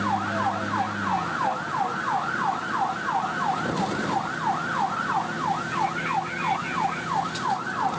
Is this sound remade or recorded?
recorded